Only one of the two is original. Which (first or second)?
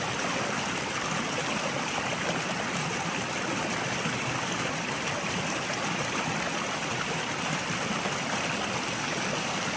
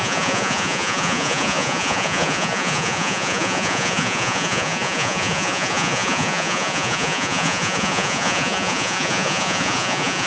first